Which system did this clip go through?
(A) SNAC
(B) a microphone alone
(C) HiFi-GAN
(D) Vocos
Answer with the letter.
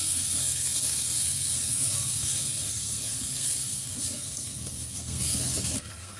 A